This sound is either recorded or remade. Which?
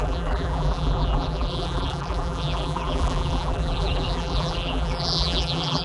remade